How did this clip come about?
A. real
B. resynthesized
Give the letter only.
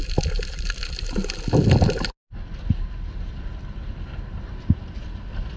A